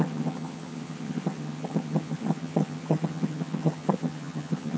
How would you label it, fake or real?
fake